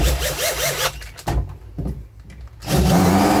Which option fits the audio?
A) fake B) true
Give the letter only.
B